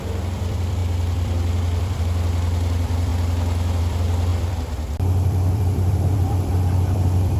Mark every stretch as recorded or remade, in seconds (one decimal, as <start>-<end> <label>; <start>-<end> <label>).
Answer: 0.0-3.1 remade; 3.1-3.8 recorded; 3.8-7.4 remade